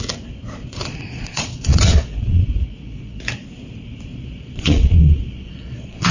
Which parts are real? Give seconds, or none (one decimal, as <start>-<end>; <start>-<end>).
0.0-0.6; 3.2-4.1